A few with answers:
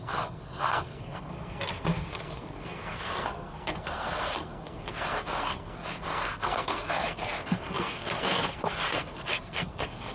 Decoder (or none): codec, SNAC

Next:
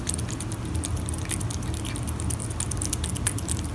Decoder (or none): none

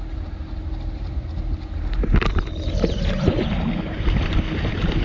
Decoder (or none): none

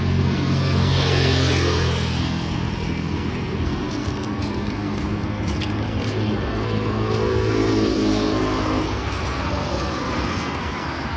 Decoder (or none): codec, SNAC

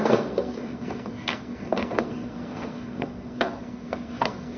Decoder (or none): codec, SNAC